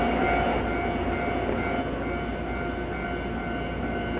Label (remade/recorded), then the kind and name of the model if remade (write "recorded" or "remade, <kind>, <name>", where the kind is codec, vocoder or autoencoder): recorded